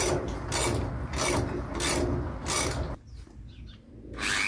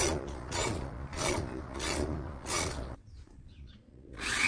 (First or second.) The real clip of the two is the first